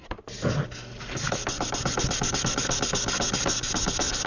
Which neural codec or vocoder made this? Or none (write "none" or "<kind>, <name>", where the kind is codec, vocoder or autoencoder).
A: none